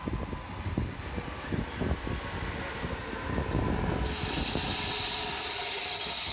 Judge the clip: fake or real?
real